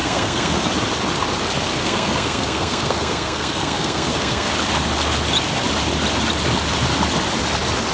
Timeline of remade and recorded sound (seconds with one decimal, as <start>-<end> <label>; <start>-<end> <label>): 0.0-0.7 remade; 0.7-1.8 recorded; 1.8-4.5 remade; 4.5-7.9 recorded